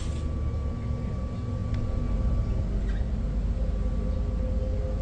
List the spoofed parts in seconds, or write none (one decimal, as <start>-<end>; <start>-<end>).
none